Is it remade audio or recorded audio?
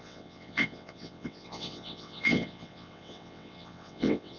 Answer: remade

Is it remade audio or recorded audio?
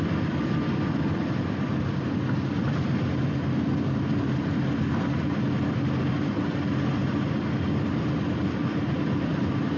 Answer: recorded